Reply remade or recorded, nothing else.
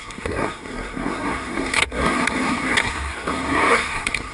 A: remade